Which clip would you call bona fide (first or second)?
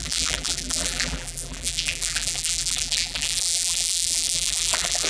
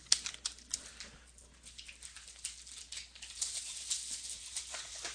second